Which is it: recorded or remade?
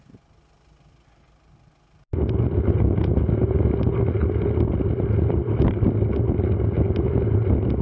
recorded